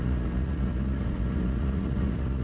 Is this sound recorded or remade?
remade